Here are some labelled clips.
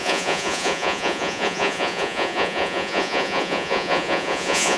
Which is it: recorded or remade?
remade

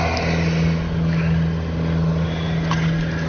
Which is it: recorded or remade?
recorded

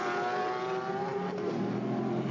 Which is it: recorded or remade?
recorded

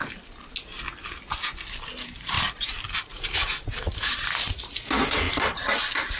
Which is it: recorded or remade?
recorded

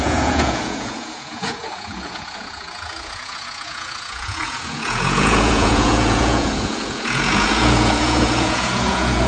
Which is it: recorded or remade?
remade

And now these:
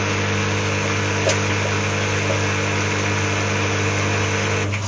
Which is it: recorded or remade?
recorded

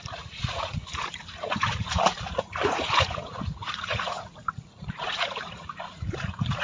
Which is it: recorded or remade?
remade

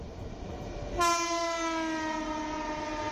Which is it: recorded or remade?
recorded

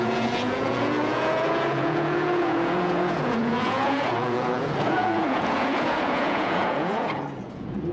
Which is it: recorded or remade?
remade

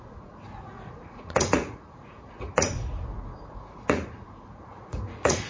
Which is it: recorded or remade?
remade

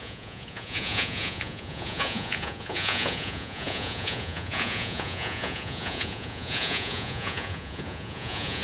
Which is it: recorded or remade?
remade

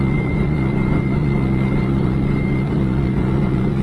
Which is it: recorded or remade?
remade